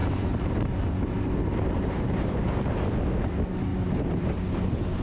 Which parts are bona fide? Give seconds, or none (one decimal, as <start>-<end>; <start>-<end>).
2.8-3.7; 4.5-5.0

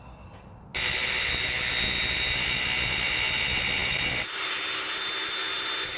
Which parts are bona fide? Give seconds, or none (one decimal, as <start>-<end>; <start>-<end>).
0.0-6.0

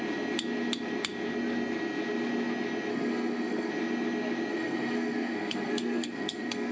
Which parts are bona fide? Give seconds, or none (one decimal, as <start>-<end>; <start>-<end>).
0.0-2.9; 3.7-4.5